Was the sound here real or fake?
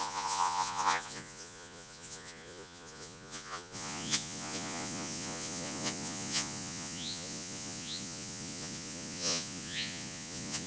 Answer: fake